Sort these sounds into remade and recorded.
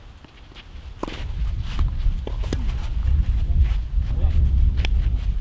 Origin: recorded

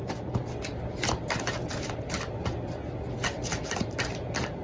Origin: recorded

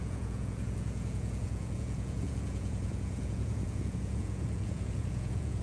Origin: remade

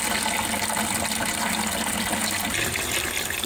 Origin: recorded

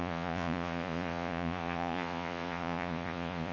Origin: remade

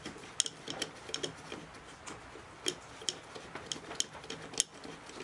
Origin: recorded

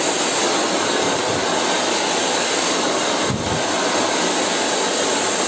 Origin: recorded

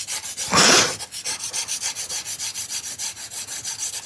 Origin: recorded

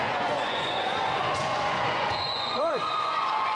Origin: remade